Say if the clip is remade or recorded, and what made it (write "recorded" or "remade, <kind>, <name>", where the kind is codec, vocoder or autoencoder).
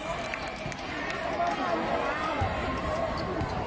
recorded